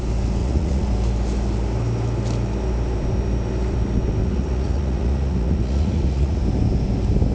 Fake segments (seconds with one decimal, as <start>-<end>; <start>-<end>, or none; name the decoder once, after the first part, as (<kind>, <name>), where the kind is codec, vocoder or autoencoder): 0.4-0.9 (vocoder, Vocos); 4.2-6.4